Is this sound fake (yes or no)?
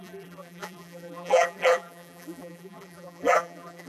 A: yes